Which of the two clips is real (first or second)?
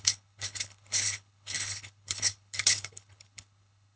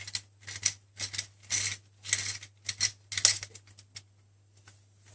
second